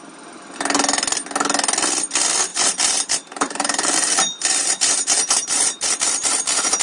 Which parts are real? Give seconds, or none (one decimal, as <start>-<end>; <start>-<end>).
0.0-2.5